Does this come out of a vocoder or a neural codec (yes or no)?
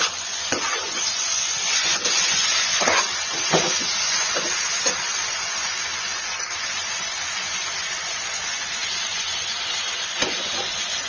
yes